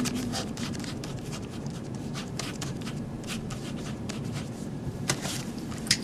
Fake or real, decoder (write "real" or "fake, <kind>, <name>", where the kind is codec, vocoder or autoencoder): fake, vocoder, BigVGAN v2